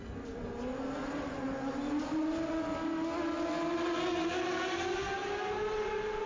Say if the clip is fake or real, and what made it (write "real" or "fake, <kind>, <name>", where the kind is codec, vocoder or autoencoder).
real